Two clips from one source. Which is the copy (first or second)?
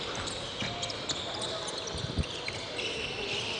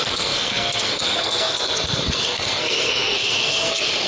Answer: second